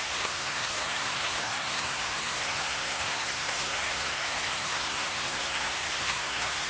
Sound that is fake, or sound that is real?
fake